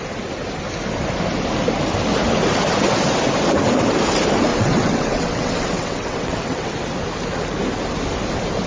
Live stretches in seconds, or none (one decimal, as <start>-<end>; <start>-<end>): 0.0-4.5; 6.7-8.7